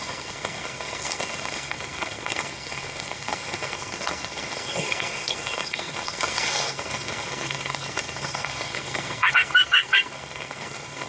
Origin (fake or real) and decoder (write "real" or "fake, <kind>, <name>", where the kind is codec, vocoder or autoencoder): fake, codec, SNAC